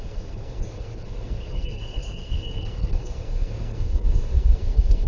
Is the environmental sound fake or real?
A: fake